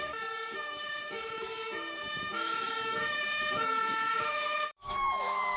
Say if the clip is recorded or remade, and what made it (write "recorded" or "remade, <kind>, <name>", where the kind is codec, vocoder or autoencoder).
remade, autoencoder, DAC-VAE